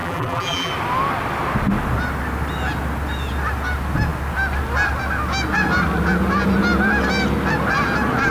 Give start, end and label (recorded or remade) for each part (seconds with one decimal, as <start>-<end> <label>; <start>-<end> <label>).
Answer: 0.0-0.7 remade; 0.7-8.3 recorded

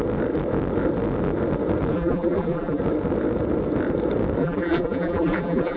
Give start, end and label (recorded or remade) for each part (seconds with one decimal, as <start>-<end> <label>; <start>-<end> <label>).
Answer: 0.0-1.9 recorded; 1.9-2.8 remade; 2.8-4.4 recorded; 4.4-5.8 remade